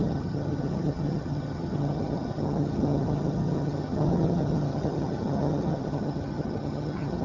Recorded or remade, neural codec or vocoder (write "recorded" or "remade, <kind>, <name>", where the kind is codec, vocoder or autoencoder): remade, vocoder, HiFi-GAN